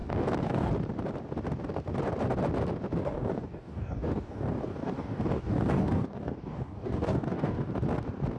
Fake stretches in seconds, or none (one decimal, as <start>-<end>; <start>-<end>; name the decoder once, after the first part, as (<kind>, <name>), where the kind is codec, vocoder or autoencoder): 0.0-0.7 (codec, DAC); 3.0-7.7